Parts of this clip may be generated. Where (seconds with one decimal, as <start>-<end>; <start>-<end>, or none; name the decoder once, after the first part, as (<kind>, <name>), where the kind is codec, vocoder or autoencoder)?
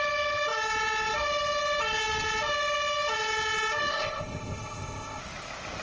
3.9-5.2 (codec, ZipCodec)